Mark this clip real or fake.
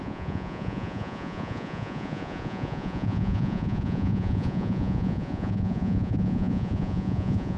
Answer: fake